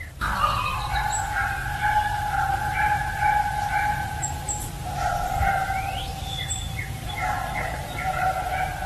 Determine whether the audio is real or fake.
fake